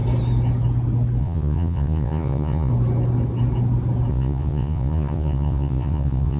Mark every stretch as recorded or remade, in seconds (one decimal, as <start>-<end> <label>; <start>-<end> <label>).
0.0-1.2 recorded; 1.2-2.7 remade; 2.7-4.1 recorded; 4.1-6.4 remade